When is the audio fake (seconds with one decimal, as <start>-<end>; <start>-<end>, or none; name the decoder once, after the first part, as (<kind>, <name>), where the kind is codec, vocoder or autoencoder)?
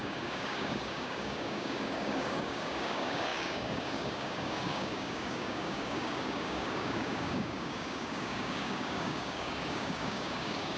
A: 0.0-10.8 (codec, DAC)